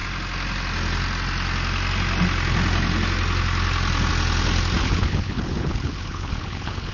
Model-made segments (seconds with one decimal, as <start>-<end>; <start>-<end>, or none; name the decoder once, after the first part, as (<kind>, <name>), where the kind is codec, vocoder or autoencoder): 4.8-6.9 (codec, HILCodec)